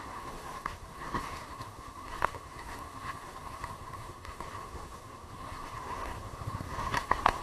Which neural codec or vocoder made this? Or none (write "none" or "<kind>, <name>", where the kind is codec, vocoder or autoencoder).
codec, SNAC